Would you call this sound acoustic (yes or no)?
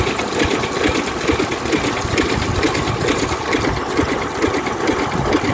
yes